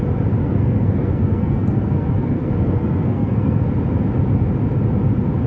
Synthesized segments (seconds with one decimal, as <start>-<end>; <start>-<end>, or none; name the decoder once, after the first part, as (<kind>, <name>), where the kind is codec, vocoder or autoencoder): 0.4-3.7 (codec, SNAC)